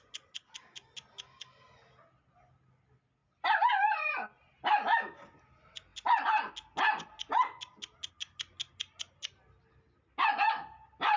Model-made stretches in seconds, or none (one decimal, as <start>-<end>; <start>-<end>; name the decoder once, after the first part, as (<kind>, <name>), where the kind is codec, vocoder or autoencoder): none